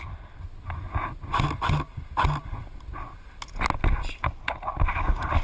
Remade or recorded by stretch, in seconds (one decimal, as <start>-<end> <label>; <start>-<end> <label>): 0.0-5.4 recorded